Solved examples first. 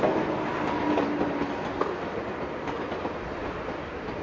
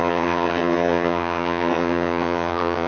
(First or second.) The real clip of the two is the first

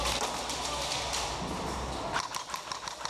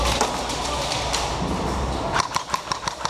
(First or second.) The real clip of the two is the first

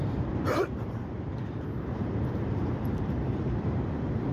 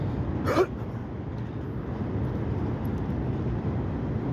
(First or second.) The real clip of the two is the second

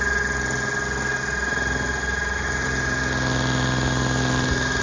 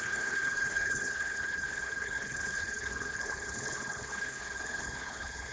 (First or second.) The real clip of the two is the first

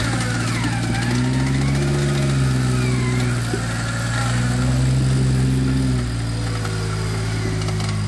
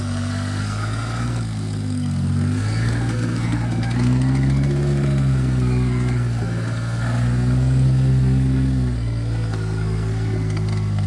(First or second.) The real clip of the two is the first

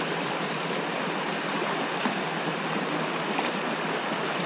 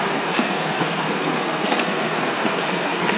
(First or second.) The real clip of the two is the first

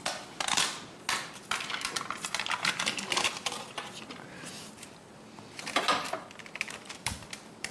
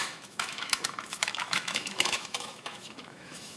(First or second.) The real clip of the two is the first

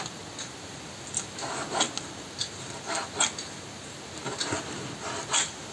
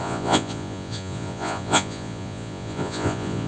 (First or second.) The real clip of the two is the first